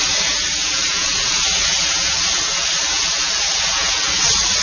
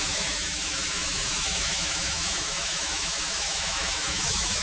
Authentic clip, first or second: first